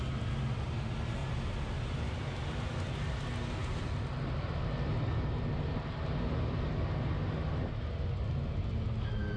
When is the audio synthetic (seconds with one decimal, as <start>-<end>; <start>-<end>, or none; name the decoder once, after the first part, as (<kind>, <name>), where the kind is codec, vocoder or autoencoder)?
none